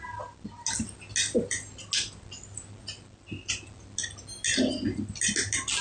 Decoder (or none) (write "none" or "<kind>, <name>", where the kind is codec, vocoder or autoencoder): none